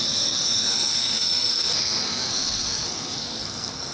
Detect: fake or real fake